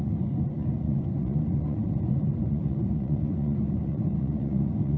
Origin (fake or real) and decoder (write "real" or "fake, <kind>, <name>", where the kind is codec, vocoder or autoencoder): fake, vocoder, Vocos